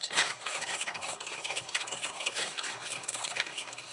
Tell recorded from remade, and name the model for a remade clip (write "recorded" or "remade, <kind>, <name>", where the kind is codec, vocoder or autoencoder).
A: remade, codec, SNAC